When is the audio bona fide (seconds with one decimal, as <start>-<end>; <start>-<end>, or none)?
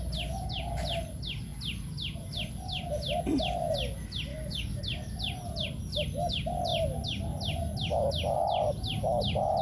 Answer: 0.0-4.3; 4.8-9.6